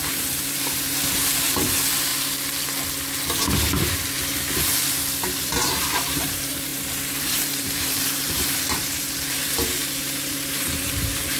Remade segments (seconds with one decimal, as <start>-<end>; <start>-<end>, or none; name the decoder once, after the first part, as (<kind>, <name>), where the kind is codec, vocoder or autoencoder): 0.0-2.1 (vocoder, BigVGAN v2); 5.4-11.4

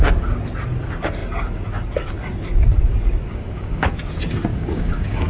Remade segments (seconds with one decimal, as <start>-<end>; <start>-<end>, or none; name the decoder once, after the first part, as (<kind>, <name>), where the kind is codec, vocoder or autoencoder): 3.3-3.9 (codec, DAC); 4.5-5.3

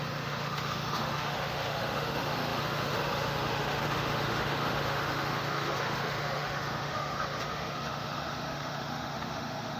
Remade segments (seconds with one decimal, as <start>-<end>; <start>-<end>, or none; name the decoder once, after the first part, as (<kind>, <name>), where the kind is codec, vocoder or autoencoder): 0.0-9.8 (autoencoder, DAC-VAE)

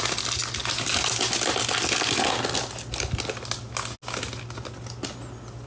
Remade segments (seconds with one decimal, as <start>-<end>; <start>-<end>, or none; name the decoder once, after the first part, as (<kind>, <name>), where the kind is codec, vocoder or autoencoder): none

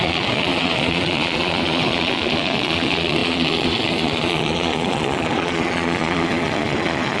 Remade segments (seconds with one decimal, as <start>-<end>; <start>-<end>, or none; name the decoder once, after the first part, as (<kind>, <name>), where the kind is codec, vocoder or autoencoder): 0.0-7.2 (vocoder, Vocos)

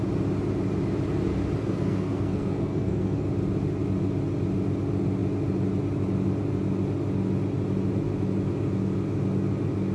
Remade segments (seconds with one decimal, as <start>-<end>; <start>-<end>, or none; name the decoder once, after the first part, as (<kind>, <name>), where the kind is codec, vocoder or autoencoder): 1.6-3.3 (codec, SNAC)

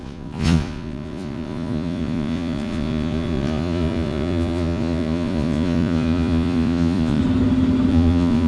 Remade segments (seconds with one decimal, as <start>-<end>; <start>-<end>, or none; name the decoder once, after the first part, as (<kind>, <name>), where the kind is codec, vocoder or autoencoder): 0.0-7.2 (vocoder, Vocos); 7.9-8.5

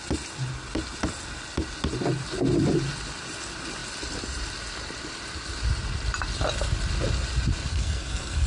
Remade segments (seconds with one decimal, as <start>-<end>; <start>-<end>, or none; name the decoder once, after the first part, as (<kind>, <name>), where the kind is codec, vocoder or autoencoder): 7.7-8.5 (codec, SNAC)